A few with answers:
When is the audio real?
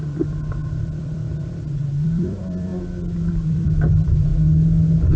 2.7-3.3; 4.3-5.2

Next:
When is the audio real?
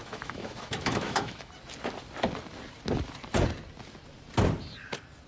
1.5-5.3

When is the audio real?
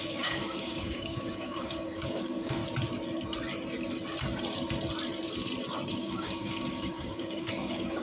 2.6-5.9